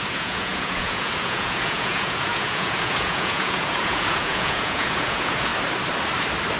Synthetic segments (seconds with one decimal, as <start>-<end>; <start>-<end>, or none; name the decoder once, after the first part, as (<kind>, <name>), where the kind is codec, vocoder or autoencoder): 0.0-5.5 (vocoder, Vocos)